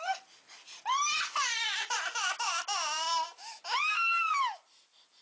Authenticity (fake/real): real